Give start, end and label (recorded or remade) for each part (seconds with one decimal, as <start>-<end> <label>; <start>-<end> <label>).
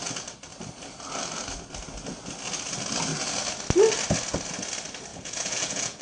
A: 0.0-5.1 recorded; 5.1-6.0 remade